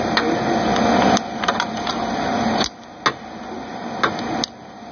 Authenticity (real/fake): real